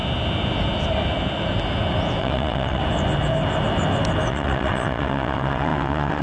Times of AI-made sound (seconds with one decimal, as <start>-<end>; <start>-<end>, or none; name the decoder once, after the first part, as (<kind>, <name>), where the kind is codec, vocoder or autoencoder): 2.2-2.8 (vocoder, WaveNeXt); 4.3-6.2